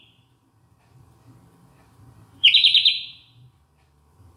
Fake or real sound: fake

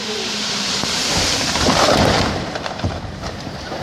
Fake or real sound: fake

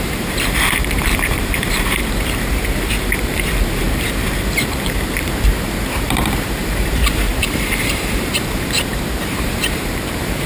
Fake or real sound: fake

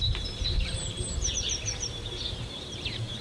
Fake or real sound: fake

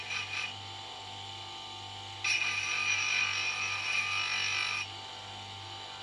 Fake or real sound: real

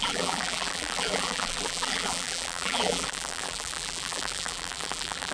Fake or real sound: fake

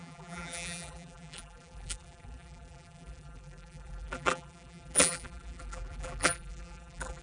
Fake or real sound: fake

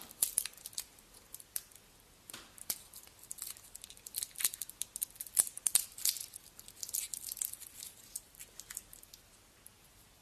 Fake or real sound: real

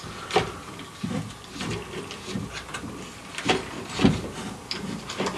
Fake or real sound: real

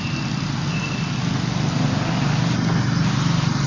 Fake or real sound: real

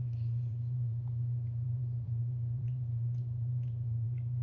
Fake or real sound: fake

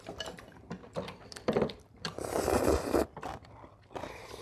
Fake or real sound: fake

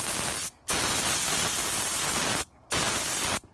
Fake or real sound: real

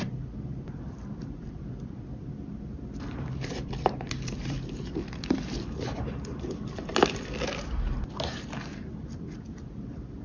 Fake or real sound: fake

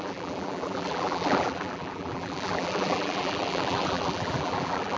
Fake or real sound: fake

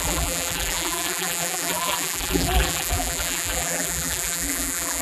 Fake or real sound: fake